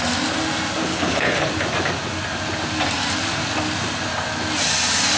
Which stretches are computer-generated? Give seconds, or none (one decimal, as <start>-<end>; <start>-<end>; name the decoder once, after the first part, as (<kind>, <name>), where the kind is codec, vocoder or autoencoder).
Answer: 0.9-1.5 (codec, HILCodec)